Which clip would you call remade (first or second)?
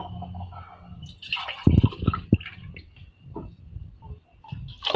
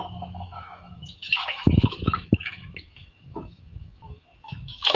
second